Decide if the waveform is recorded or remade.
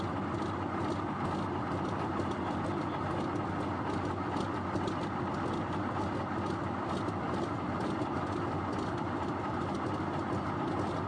recorded